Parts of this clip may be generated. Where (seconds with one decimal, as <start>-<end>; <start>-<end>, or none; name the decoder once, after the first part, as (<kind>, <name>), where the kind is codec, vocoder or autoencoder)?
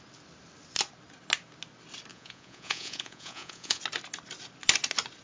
2.1-3.8 (vocoder, Vocos)